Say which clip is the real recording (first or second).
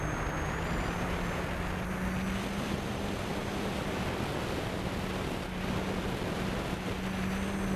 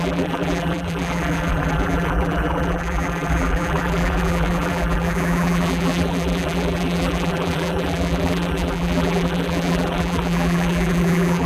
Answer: first